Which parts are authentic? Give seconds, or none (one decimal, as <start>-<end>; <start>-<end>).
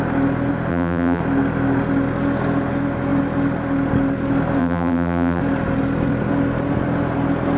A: 0.0-0.7; 1.2-4.6; 5.4-7.6